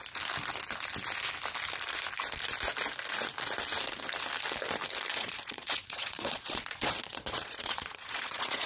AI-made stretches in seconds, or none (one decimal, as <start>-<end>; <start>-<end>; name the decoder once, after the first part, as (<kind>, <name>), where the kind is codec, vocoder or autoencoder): 5.1-8.7 (vocoder, Vocos)